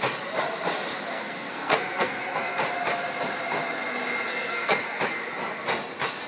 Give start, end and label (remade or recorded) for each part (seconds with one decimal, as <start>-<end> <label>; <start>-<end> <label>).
0.0-1.1 recorded; 1.1-2.6 remade; 2.6-4.3 recorded; 4.3-5.0 remade; 5.0-6.3 recorded